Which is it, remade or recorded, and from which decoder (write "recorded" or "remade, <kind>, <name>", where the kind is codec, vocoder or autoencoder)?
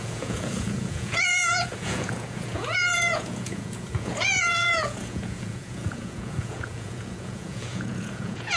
remade, vocoder, Vocos